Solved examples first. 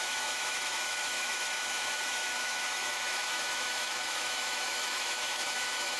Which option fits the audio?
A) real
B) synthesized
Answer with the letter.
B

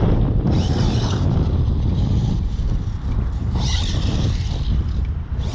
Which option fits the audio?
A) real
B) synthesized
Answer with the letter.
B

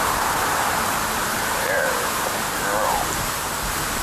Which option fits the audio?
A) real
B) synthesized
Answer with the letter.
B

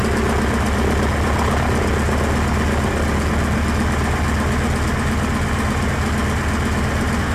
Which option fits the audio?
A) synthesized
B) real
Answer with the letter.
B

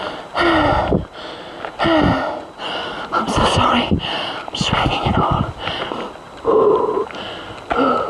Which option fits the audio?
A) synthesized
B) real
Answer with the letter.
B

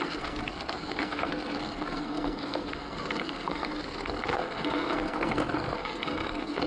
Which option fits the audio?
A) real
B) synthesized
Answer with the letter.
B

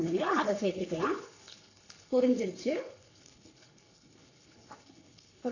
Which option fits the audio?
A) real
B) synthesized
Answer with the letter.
B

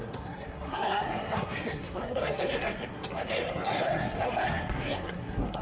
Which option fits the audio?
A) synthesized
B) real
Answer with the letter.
A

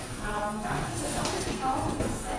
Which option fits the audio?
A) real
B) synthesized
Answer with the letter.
B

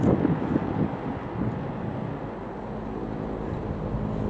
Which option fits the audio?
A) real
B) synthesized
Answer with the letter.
A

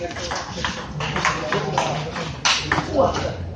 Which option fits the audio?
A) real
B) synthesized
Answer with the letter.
A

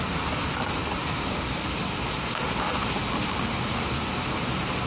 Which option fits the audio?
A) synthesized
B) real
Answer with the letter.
B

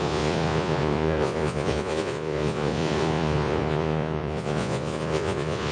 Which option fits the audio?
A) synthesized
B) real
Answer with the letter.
A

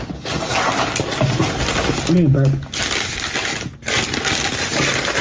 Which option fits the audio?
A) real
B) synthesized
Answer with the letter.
A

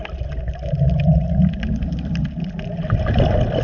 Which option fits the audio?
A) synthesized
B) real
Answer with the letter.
B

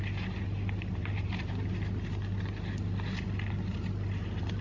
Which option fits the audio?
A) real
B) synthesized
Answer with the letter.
A